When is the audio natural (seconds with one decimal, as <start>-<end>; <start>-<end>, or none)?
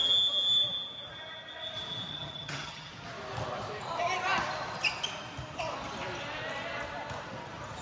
0.0-2.1; 2.9-7.8